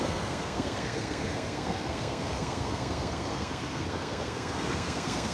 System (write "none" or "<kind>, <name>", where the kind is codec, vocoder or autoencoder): codec, SNAC